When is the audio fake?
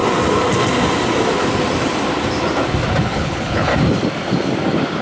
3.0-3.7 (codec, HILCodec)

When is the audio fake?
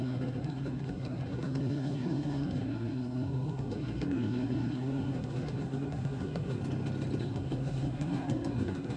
0.0-6.6 (codec, SNAC); 7.2-9.0